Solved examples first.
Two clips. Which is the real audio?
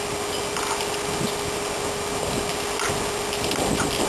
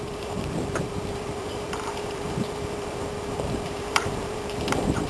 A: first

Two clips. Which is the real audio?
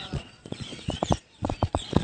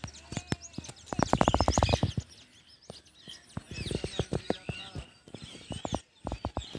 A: second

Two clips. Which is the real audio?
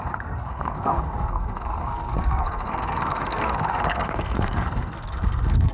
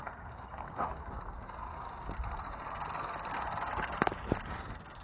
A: second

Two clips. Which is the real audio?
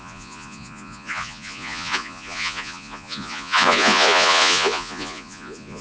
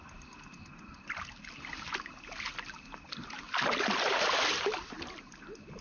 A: second